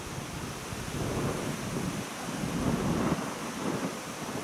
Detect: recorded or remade recorded